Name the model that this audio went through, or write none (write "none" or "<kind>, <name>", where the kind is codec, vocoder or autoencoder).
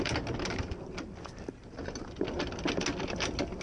none